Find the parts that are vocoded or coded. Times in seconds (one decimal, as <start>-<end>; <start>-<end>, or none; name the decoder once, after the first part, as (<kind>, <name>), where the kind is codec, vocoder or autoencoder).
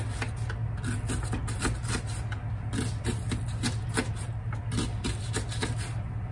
none